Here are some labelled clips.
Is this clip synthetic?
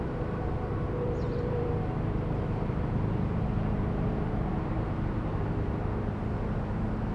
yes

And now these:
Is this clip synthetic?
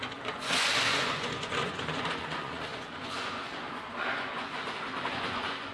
yes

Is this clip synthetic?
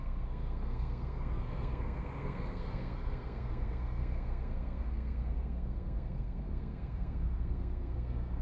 yes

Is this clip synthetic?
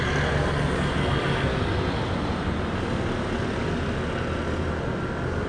no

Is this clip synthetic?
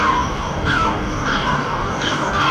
yes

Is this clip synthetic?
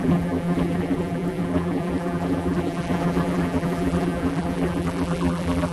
yes